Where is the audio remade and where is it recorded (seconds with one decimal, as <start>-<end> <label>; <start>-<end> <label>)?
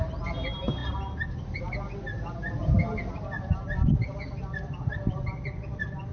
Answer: 0.0-6.1 recorded